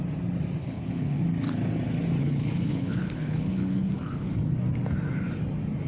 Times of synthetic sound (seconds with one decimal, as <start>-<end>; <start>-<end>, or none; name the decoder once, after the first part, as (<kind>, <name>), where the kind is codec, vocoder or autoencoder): 0.6-1.2 (codec, HILCodec); 2.2-4.3